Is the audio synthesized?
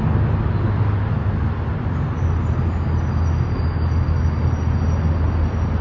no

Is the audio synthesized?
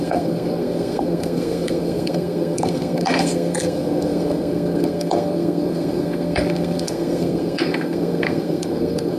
yes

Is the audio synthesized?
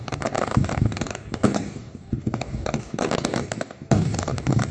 yes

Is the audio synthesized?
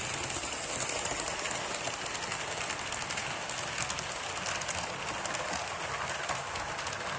no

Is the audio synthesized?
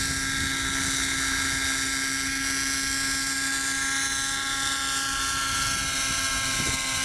no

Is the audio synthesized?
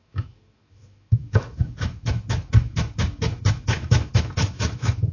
yes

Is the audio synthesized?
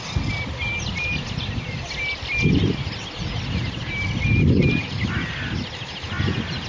no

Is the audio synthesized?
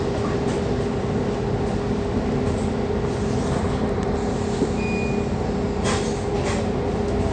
no